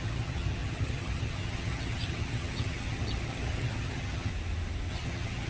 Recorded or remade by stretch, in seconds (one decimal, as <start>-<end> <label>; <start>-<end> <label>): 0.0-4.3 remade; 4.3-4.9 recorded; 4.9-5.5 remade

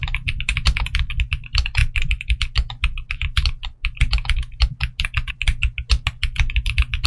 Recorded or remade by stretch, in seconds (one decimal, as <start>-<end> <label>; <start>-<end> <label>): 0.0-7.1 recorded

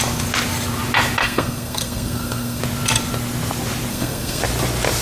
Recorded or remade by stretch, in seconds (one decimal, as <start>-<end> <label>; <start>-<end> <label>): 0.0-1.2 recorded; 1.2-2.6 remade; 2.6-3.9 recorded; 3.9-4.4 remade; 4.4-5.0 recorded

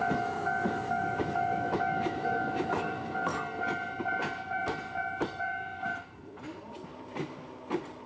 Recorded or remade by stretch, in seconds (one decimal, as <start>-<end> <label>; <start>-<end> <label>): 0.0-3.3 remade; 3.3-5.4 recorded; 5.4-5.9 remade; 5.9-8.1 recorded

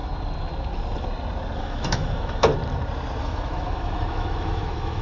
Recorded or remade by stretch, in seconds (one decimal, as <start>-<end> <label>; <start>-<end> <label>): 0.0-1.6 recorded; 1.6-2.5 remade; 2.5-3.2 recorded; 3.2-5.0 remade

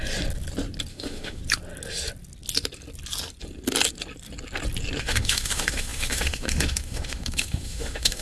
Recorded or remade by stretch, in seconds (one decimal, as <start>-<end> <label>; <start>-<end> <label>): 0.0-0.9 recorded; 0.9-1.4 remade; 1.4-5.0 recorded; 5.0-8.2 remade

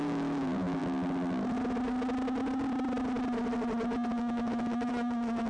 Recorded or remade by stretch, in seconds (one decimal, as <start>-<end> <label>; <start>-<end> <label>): 0.0-0.8 remade; 0.8-4.1 recorded; 4.1-5.5 remade

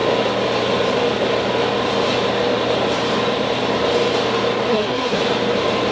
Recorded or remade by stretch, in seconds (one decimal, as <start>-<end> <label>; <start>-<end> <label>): 0.0-4.7 recorded; 4.7-5.2 remade; 5.2-5.9 recorded